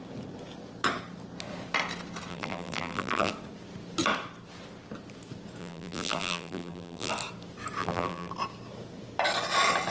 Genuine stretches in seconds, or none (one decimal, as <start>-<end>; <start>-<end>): 0.0-2.3; 3.3-5.6; 7.1-7.8; 8.3-9.9